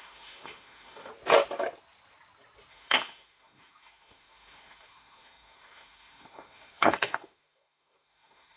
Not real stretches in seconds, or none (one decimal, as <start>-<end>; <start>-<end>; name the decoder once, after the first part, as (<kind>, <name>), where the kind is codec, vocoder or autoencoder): 0.0-1.1 (autoencoder, DAC-VAE); 2.7-8.6

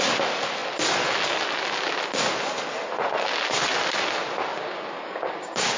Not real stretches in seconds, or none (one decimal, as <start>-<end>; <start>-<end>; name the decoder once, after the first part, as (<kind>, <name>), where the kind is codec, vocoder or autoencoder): 4.5-5.8 (codec, DAC)

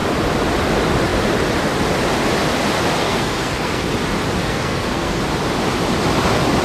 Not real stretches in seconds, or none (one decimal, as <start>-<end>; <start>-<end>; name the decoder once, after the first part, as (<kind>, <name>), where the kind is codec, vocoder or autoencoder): 3.0-3.9 (codec, SNAC); 4.4-5.2

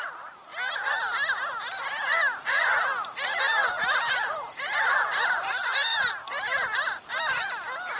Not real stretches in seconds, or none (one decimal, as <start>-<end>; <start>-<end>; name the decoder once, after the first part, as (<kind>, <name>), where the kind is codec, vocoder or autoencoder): 0.0-0.5 (vocoder, BigVGAN v2); 3.4-5.9

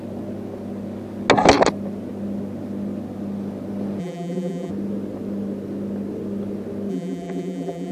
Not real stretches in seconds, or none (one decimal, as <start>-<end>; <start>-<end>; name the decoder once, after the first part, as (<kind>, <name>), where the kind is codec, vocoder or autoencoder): 4.0-4.7 (vocoder, BigVGAN v2); 6.9-7.9